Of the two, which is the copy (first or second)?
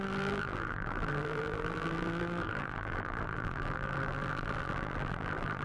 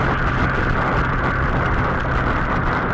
first